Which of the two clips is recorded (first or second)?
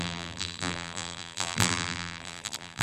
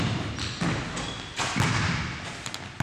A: second